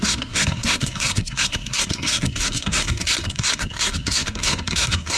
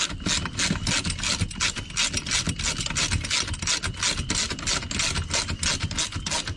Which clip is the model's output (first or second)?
first